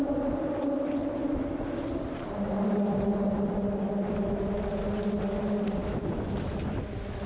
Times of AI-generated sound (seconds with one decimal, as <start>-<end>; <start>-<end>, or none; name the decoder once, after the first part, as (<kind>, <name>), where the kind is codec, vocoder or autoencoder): 5.8-6.3 (autoencoder, DAC-VAE)